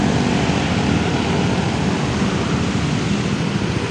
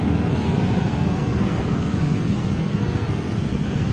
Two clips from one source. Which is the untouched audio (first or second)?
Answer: first